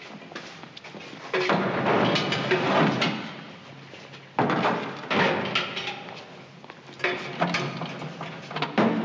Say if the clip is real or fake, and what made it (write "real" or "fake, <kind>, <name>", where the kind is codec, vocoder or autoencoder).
real